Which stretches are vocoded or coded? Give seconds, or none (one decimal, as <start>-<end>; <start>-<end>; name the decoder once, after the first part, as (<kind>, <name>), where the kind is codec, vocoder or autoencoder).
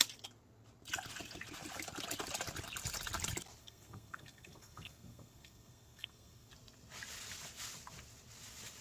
3.6-6.5 (codec, SNAC)